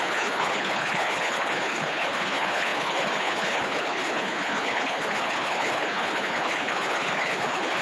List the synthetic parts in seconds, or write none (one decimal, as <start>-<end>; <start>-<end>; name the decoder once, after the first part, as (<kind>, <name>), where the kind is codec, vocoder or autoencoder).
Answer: 0.0-7.8 (codec, HILCodec)